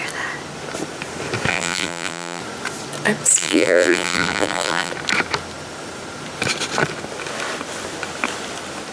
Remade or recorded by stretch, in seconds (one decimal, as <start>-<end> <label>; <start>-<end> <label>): 0.0-1.5 recorded; 1.5-2.4 remade; 2.4-3.4 recorded; 3.4-4.9 remade; 4.9-8.9 recorded